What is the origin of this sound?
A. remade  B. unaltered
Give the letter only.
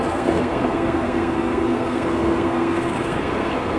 A